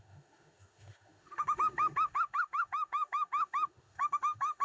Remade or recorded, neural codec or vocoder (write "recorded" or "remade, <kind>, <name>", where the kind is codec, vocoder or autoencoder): remade, autoencoder, DAC-VAE